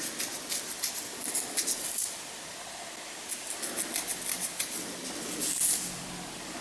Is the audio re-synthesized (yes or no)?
no